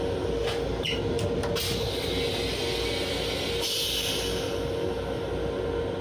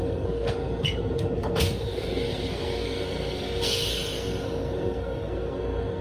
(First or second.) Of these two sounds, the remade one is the second